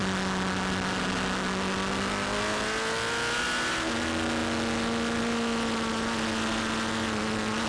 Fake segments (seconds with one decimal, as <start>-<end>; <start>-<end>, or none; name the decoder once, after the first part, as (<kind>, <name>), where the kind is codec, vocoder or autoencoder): none